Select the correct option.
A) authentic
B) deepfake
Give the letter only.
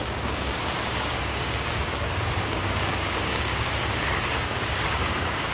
B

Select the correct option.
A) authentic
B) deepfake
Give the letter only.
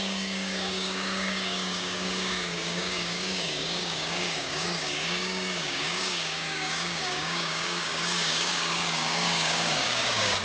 B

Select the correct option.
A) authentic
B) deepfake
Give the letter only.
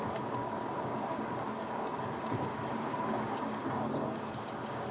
B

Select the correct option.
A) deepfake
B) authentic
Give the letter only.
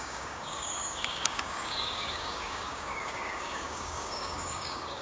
A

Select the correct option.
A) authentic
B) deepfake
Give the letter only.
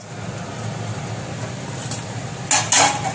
A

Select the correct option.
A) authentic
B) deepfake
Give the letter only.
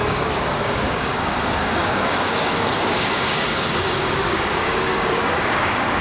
B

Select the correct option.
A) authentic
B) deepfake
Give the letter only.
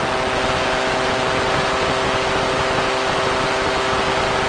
A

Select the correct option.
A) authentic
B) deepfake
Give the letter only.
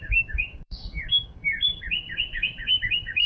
B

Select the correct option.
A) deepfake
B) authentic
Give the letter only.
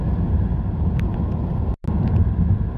B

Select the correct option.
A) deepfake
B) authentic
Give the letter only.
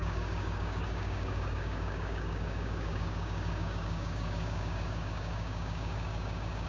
A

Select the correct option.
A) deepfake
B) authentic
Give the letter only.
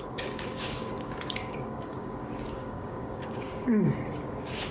A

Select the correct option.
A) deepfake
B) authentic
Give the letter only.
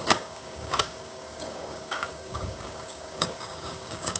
A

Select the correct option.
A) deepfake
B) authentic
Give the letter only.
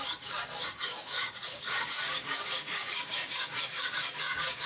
A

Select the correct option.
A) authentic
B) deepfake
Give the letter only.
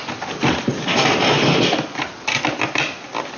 A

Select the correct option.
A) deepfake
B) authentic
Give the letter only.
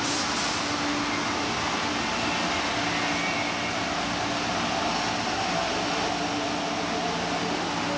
B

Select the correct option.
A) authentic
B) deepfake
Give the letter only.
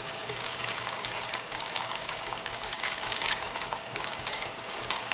B